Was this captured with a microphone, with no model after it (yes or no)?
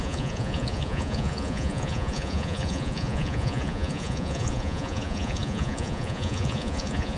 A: no